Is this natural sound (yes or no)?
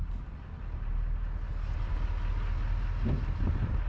yes